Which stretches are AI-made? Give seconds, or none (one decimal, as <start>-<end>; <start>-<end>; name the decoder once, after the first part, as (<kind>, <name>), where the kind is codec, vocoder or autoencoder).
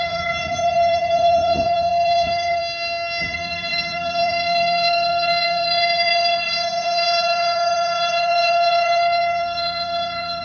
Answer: 0.0-2.6 (vocoder, Vocos); 3.2-10.4